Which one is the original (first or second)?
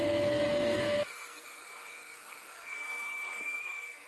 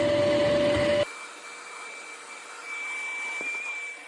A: second